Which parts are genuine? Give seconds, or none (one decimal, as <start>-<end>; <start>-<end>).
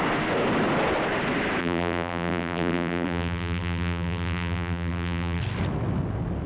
0.0-1.6; 5.4-6.5